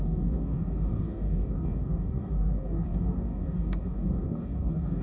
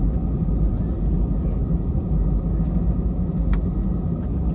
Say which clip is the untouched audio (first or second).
second